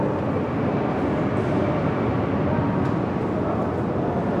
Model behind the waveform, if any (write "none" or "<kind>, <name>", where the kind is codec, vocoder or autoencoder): none